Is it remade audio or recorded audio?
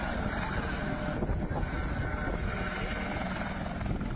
recorded